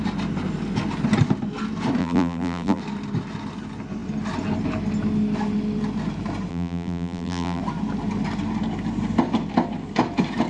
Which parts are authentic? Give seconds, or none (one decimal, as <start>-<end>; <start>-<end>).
0.0-2.0; 2.8-6.5; 7.6-10.5